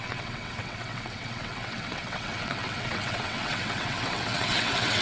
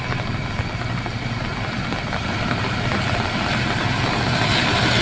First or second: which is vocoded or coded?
first